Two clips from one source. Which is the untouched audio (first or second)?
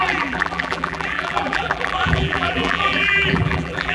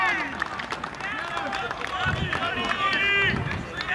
second